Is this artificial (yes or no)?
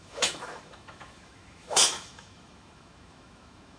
yes